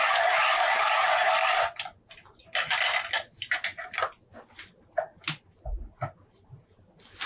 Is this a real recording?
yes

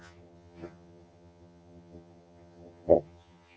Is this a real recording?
no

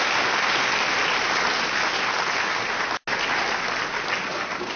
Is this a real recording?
yes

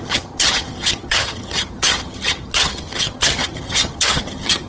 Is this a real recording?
no